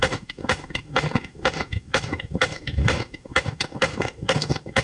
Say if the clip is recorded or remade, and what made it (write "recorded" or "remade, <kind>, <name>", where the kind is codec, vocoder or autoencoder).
remade, autoencoder, DAC-VAE